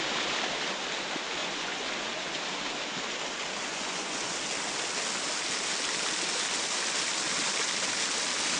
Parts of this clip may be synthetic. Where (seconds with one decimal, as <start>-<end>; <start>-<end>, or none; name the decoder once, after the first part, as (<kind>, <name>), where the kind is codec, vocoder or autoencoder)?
1.4-1.9 (vocoder, Vocos); 3.7-4.4

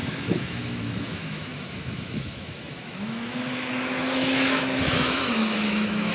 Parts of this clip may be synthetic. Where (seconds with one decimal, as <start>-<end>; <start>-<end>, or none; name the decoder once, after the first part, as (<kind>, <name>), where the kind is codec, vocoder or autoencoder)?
0.0-6.1 (autoencoder, DAC-VAE)

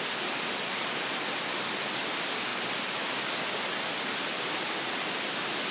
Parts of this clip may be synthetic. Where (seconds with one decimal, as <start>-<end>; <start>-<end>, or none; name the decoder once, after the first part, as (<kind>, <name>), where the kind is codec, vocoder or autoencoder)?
none

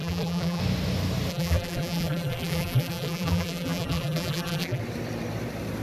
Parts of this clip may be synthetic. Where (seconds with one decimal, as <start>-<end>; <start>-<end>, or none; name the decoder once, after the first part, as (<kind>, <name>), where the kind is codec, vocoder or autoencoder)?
0.0-0.6 (vocoder, BigVGAN v2); 1.3-4.8

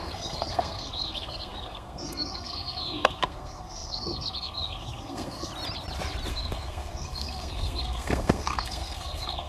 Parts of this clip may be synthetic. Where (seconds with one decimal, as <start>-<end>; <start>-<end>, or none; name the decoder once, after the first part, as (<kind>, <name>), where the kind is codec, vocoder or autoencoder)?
0.0-5.5 (codec, SNAC); 6.3-9.5

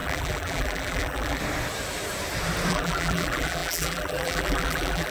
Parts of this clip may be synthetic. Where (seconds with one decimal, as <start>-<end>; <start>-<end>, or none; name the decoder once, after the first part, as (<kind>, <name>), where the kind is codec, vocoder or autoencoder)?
0.0-1.4 (vocoder, BigVGAN v2); 2.7-5.1